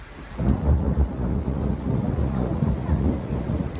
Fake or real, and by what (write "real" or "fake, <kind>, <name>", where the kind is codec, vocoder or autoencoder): fake, vocoder, Vocos